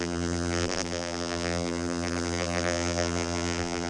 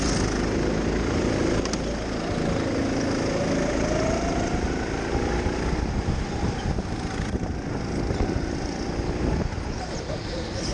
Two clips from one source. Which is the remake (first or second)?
first